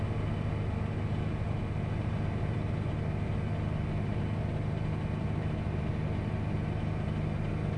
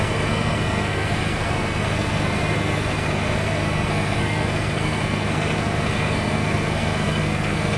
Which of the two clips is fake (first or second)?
second